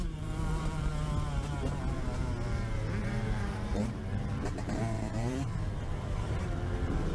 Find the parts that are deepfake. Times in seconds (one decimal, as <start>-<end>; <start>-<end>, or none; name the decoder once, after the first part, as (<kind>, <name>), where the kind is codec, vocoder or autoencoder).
0.0-0.9 (vocoder, BigVGAN v2); 3.0-7.1